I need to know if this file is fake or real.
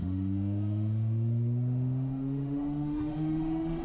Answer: fake